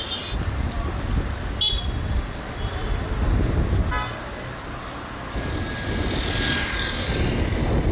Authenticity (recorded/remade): recorded